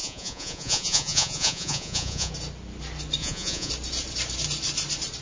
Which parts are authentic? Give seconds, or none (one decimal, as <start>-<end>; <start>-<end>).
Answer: 2.3-3.2; 3.7-5.2